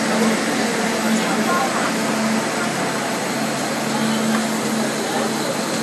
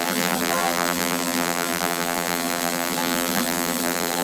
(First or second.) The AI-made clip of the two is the second